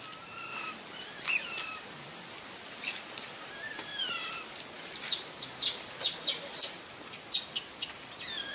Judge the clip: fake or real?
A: real